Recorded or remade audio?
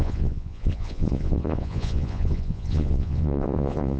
remade